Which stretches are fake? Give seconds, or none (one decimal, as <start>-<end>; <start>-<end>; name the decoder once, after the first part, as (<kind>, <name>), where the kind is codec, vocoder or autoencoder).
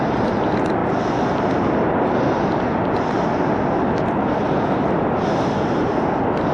none